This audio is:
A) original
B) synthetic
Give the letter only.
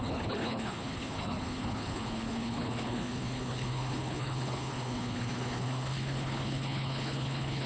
B